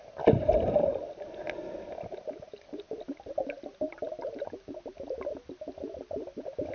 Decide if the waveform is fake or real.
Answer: real